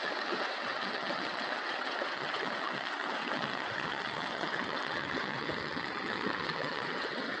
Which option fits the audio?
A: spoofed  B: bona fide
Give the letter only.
A